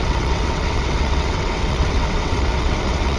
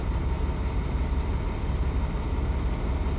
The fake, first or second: first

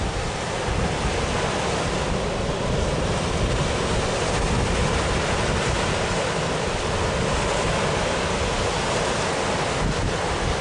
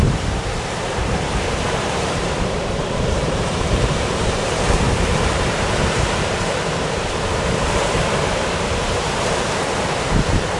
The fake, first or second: second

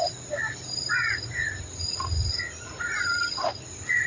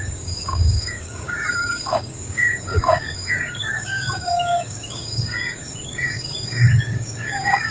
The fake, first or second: second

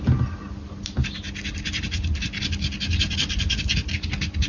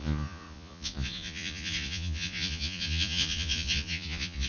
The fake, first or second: second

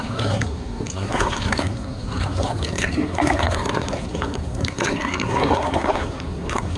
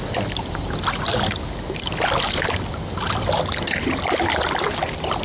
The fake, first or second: first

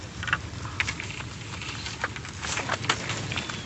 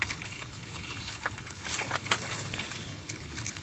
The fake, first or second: second